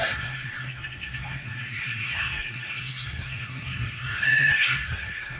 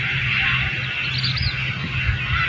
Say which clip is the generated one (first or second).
first